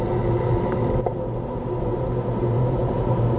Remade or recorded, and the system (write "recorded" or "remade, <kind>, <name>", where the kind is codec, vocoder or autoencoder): recorded